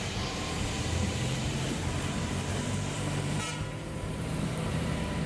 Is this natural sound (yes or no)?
no